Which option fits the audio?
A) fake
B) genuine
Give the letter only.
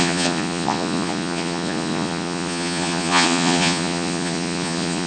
A